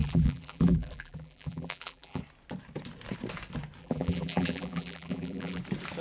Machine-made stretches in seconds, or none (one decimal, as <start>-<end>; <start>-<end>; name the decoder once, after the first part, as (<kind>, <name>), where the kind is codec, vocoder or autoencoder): 0.0-2.2 (vocoder, BigVGAN v2); 3.8-5.6

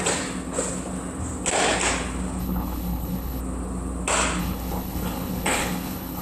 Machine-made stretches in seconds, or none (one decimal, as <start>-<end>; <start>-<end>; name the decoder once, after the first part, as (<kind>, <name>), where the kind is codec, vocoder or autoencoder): 2.4-3.4 (codec, HILCodec); 4.4-6.2

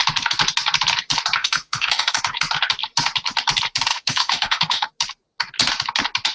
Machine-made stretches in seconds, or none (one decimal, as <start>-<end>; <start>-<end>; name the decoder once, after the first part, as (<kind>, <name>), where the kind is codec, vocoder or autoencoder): 1.4-2.2 (autoencoder, DAC-VAE); 3.9-4.9

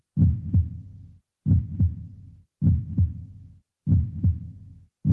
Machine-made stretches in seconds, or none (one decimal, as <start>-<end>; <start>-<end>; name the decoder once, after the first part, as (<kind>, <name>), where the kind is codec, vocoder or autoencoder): none

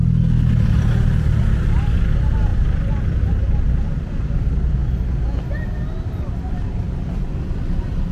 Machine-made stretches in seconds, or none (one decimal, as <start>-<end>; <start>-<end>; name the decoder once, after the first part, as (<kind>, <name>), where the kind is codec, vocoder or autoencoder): none

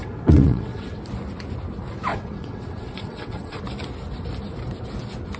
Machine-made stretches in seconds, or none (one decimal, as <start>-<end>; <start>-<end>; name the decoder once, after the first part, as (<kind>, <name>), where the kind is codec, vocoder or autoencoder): 0.0-1.0 (vocoder, WaveNeXt); 2.1-3.6

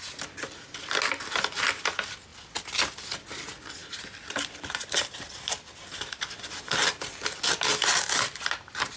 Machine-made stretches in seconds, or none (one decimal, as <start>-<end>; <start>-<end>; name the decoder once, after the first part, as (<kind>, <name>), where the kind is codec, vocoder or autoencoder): 3.8-8.4 (vocoder, BigVGAN v2)

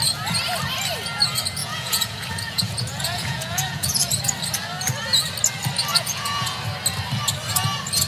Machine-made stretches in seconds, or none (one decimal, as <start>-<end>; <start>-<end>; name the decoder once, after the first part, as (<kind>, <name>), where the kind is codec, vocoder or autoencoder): 1.6-4.2 (vocoder, Vocos); 5.9-6.6